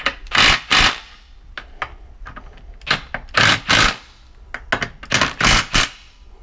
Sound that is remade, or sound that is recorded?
recorded